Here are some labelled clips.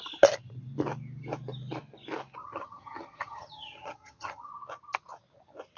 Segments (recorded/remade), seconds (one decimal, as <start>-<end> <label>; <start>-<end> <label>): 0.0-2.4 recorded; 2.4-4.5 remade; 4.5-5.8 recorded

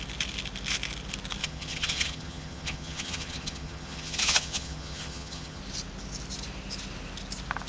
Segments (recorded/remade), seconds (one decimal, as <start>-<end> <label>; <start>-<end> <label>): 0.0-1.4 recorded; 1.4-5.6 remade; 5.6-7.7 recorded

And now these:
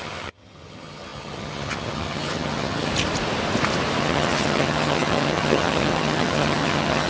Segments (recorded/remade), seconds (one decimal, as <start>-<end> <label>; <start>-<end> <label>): 0.0-2.9 remade; 2.9-4.0 recorded; 4.0-7.1 remade